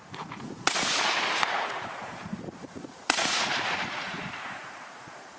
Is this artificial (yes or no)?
yes